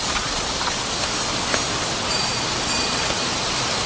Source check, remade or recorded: recorded